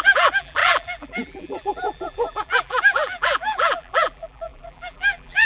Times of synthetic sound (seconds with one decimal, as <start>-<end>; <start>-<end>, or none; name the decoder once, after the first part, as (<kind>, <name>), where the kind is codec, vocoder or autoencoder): 0.0-5.5 (vocoder, BigVGAN v2)